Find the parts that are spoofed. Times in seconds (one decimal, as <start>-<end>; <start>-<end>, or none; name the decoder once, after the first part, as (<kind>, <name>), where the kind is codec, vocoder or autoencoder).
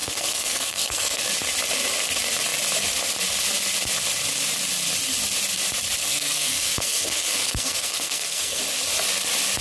0.0-1.2 (codec, SNAC); 6.0-8.6